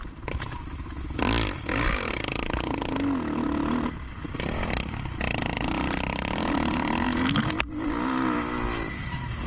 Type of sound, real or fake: real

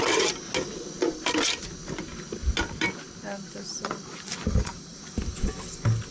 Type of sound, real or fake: real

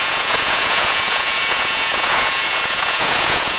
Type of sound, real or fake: fake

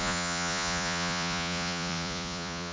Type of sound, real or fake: fake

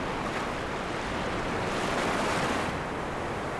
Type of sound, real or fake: real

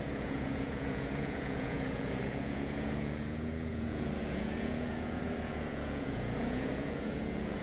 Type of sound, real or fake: fake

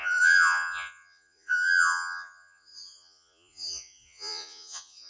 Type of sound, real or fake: fake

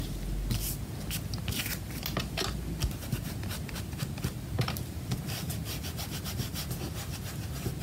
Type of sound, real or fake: real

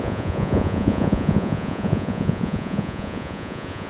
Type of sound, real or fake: fake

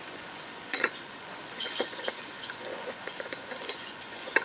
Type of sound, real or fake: fake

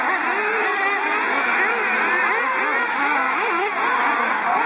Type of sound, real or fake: real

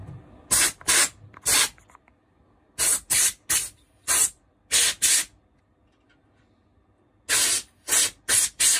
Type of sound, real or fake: real